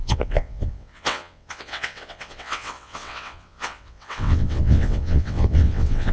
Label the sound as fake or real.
fake